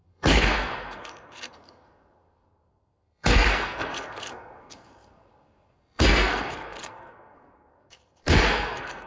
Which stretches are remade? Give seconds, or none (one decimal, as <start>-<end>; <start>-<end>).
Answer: 0.0-9.1